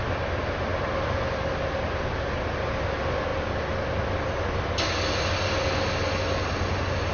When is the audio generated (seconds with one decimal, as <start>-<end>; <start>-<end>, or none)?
none